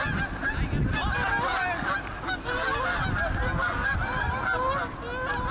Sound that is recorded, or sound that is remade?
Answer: recorded